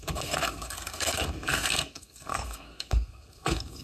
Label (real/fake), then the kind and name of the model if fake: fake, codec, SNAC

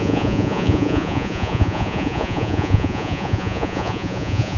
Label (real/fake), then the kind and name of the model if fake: fake, vocoder, Vocos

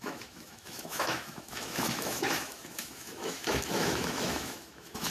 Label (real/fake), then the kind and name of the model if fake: fake, autoencoder, DAC-VAE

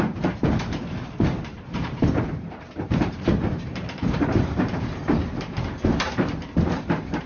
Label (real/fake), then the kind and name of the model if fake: fake, vocoder, BigVGAN v2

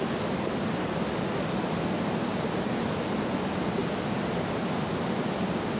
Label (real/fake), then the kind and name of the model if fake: real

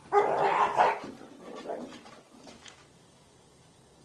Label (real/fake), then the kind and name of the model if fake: real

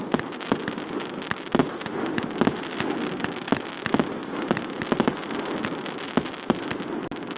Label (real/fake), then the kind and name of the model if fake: real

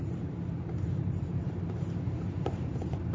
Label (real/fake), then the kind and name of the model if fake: fake, vocoder, BigVGAN v2